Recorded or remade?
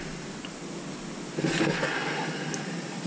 recorded